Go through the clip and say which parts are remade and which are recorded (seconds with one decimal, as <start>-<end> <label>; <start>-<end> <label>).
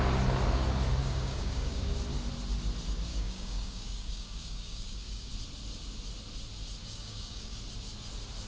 0.0-1.0 recorded; 1.0-1.9 remade; 1.9-3.1 recorded; 3.1-5.3 remade; 5.3-6.8 recorded; 6.8-7.6 remade; 7.6-8.5 recorded